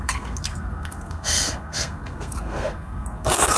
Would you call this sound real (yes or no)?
no